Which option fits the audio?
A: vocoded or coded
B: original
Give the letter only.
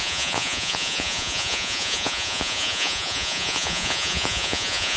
A